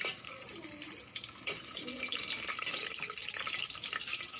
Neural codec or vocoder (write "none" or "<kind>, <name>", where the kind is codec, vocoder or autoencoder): none